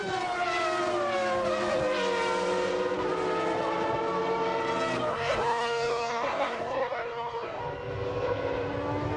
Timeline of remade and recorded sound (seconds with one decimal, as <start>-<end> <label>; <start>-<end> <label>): 0.0-5.1 recorded; 5.1-7.6 remade; 7.6-9.2 recorded